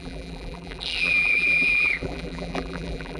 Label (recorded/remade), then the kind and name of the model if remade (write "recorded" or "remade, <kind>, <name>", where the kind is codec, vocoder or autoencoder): remade, vocoder, BigVGAN v2